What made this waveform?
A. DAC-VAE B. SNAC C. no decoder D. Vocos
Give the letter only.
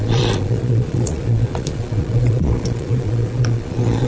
D